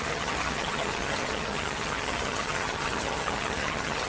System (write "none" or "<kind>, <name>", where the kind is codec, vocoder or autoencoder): vocoder, HiFi-GAN